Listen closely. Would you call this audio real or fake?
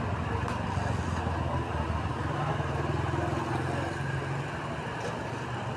real